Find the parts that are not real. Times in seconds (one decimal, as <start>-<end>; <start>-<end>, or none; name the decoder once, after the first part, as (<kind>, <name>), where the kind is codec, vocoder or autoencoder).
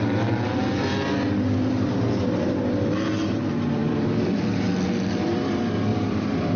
3.8-4.7 (vocoder, BigVGAN v2); 5.9-6.6